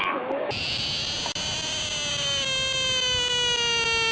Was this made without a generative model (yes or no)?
yes